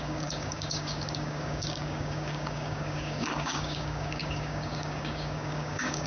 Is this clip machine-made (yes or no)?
yes